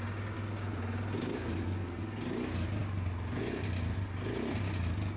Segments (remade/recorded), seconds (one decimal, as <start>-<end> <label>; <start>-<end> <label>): 0.0-5.2 recorded